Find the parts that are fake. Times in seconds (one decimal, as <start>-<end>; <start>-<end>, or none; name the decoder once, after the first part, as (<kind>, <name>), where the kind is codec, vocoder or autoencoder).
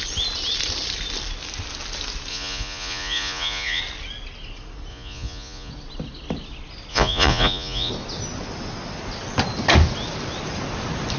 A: 2.3-3.8 (vocoder, Vocos); 4.9-5.7; 6.9-7.9